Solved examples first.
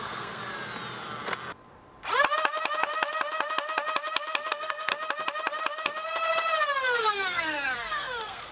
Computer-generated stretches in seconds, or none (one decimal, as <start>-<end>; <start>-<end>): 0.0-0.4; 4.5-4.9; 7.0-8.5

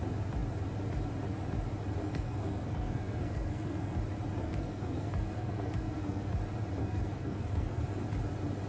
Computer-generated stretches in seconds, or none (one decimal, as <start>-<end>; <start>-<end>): 2.0-4.0; 4.4-6.3; 6.8-7.8

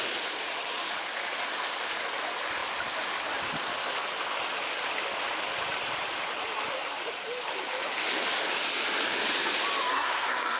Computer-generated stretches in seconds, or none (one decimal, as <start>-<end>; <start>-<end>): 9.9-10.6

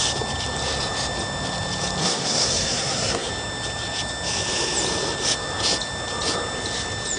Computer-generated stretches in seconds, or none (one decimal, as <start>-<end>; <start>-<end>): 2.0-3.3

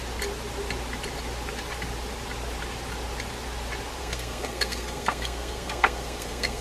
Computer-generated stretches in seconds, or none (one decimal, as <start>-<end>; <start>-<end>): 4.0-6.6

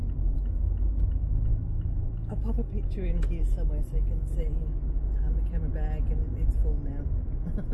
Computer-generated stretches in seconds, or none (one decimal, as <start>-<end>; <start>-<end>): none

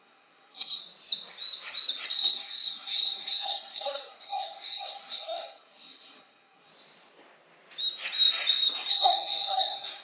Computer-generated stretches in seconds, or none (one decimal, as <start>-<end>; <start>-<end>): 0.0-0.8; 2.1-6.7; 8.9-10.0

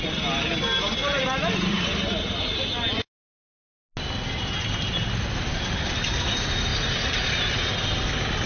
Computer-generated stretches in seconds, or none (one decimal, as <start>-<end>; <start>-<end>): none